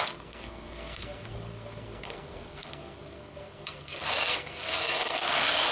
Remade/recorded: remade